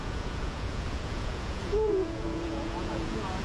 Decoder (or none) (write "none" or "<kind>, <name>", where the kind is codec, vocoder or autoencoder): vocoder, Vocos